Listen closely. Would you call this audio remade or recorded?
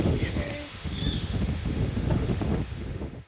remade